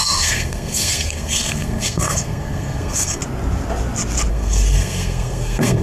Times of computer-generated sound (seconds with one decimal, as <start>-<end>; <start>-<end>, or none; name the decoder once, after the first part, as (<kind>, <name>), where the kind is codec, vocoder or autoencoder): 0.0-3.2 (codec, SNAC); 4.3-5.8